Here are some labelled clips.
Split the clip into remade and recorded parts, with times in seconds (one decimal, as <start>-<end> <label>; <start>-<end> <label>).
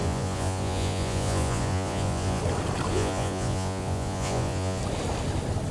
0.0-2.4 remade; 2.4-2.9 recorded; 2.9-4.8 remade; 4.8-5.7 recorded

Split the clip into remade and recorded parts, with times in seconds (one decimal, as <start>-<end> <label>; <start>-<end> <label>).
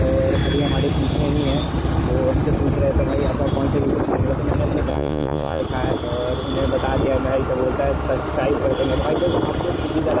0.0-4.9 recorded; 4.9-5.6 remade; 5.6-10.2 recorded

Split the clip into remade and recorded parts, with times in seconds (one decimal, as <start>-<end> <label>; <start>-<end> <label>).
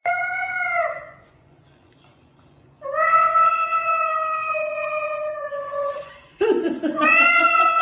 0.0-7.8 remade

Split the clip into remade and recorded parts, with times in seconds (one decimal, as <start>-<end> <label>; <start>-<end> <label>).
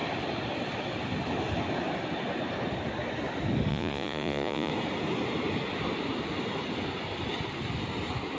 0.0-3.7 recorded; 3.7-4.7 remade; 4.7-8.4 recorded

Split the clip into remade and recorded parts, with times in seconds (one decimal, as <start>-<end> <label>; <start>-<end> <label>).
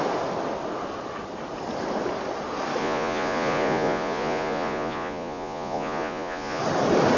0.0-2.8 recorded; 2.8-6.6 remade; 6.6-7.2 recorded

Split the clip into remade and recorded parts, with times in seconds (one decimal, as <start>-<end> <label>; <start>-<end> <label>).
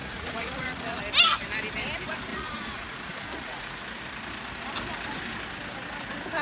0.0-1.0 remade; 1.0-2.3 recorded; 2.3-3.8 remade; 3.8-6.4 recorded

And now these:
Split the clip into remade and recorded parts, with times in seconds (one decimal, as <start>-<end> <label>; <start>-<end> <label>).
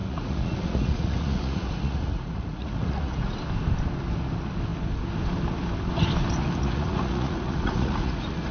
0.0-3.4 remade; 3.4-6.6 recorded; 6.6-8.5 remade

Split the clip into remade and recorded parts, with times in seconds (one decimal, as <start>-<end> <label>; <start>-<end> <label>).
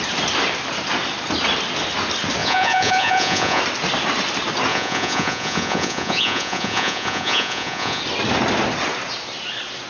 0.0-2.4 recorded; 2.4-3.6 remade; 3.6-4.7 recorded; 4.7-8.0 remade; 8.0-9.9 recorded